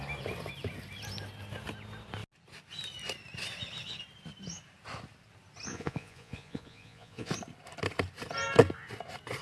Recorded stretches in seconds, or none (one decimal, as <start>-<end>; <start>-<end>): 0.0-5.7; 7.3-9.4